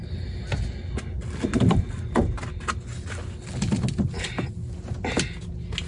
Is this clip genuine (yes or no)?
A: yes